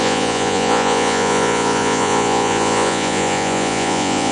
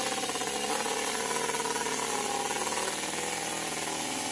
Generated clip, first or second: first